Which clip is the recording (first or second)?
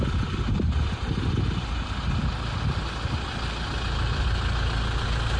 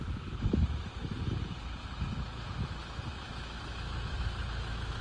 first